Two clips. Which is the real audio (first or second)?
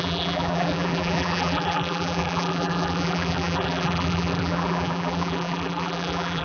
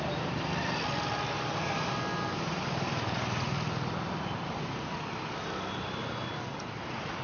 second